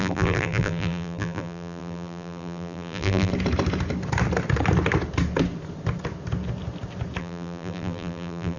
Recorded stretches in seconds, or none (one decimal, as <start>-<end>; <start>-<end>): 3.3-7.2